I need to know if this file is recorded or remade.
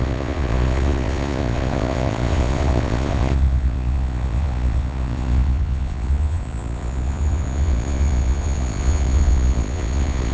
remade